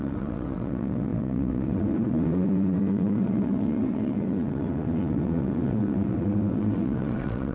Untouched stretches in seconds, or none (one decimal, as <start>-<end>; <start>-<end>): none